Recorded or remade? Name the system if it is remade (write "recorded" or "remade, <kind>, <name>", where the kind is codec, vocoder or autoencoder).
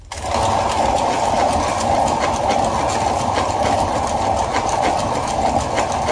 recorded